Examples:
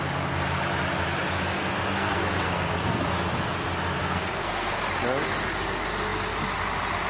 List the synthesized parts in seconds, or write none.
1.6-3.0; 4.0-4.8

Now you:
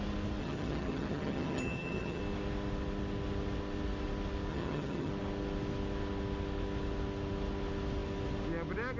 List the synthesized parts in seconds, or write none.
0.4-2.2; 4.5-5.1

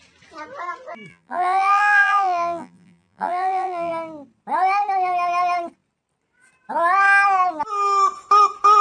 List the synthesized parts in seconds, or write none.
1.1-3.9

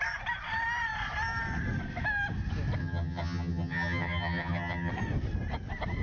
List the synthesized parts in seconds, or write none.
2.8-4.9

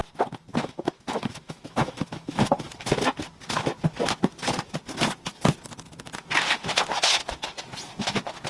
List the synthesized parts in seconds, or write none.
0.5-2.5

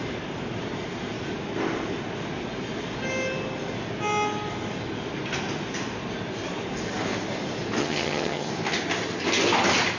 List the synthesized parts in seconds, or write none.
7.8-8.5

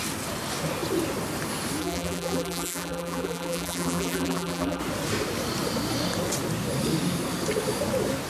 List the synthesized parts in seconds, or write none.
1.8-4.8